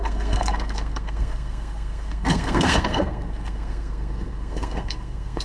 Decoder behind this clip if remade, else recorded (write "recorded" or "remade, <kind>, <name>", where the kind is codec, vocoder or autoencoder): remade, codec, SNAC